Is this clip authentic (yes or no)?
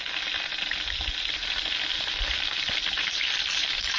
yes